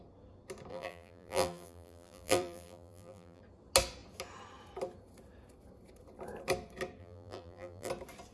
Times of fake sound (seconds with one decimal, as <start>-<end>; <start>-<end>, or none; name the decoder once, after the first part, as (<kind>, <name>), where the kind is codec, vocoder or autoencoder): 0.7-3.4 (vocoder, BigVGAN v2); 7.0-7.9